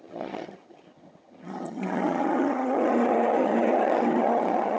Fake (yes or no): yes